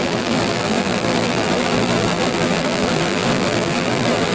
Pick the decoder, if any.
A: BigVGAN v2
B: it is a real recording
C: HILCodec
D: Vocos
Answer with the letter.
A